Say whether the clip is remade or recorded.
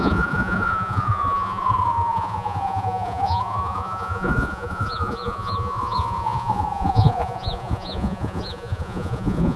remade